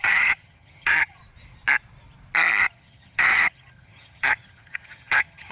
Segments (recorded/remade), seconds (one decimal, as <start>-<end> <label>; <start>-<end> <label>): 0.0-1.2 remade; 1.2-2.6 recorded; 2.6-5.5 remade